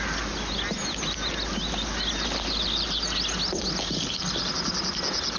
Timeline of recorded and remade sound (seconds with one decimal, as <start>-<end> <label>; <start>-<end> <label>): 0.0-5.4 recorded